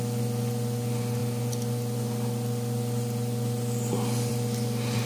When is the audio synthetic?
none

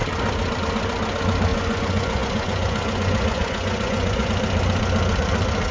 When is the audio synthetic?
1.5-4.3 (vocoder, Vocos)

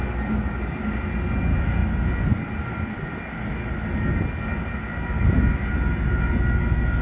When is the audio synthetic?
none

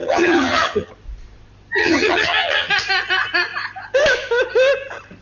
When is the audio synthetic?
0.0-0.9 (vocoder, HiFi-GAN); 1.8-2.7

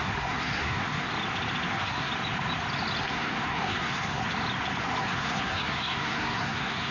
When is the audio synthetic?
0.0-1.1 (codec, SNAC); 1.7-2.1; 3.0-4.2; 5.0-6.9